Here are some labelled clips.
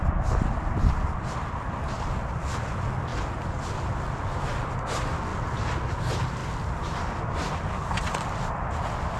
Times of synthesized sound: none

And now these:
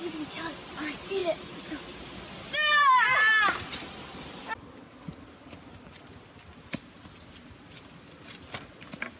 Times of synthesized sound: none

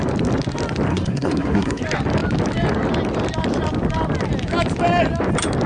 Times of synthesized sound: 0.9-1.8

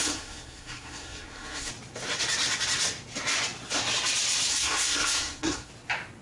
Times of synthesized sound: 0.0-1.7; 4.5-5.7